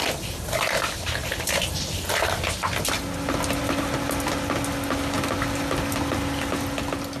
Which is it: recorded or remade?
recorded